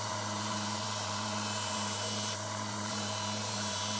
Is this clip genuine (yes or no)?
no